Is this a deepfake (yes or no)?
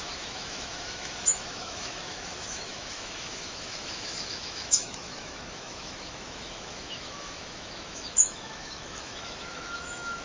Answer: yes